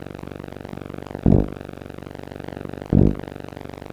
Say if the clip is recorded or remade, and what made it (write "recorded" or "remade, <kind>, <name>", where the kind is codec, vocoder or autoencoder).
recorded